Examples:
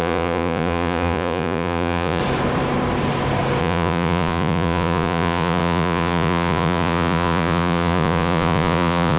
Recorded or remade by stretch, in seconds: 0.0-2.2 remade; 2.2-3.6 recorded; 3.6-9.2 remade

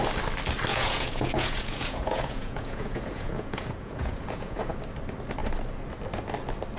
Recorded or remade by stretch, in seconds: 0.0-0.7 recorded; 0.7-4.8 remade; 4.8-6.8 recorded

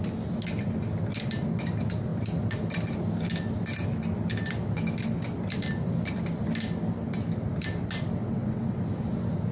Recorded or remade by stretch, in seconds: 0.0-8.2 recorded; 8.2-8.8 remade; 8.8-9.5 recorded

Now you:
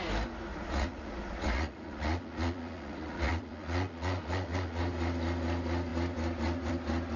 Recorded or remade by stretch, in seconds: 0.0-0.5 recorded; 0.5-4.8 remade; 4.8-7.2 recorded